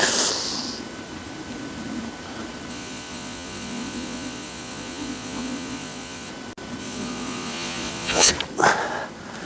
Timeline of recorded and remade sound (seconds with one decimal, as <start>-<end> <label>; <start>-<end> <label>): 0.0-2.7 recorded; 2.7-6.3 remade; 6.3-6.8 recorded; 6.8-8.3 remade; 8.3-9.4 recorded